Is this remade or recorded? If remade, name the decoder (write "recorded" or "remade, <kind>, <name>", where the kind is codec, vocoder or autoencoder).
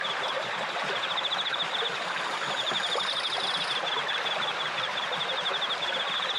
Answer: recorded